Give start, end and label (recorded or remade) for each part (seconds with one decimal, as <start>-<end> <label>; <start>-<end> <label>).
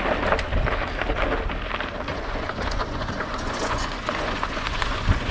0.0-2.1 recorded; 2.1-5.3 remade